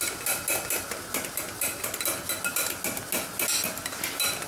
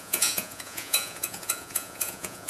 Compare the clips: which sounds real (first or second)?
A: first